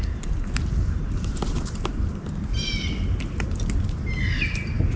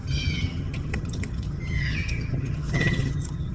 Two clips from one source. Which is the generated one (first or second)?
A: second